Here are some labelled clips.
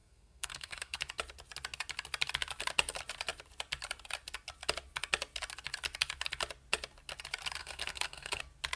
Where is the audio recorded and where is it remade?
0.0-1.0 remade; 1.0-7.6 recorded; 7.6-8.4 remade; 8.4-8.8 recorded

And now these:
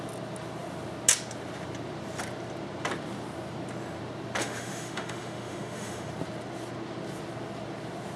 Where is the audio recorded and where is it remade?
0.0-4.4 recorded; 4.4-6.1 remade; 6.1-8.2 recorded

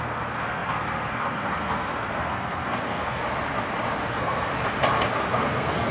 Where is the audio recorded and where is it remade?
0.0-3.2 remade; 3.2-4.1 recorded; 4.1-4.5 remade; 4.5-5.1 recorded; 5.1-5.9 remade

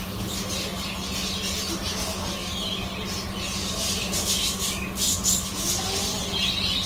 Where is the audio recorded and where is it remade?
0.0-1.9 recorded; 1.9-2.5 remade; 2.5-3.6 recorded; 3.6-5.9 remade; 5.9-6.9 recorded

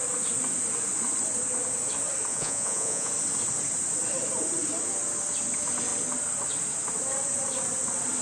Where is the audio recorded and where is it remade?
0.0-2.3 recorded; 2.3-3.1 remade; 3.1-8.2 recorded